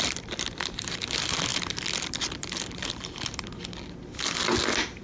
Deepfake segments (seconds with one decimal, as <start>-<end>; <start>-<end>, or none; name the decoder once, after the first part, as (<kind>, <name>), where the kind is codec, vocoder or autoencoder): none